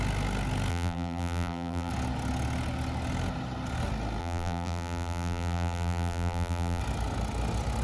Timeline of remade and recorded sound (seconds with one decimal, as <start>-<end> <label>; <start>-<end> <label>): 0.0-0.7 recorded; 0.7-1.9 remade; 1.9-4.2 recorded; 4.2-6.8 remade; 6.8-7.8 recorded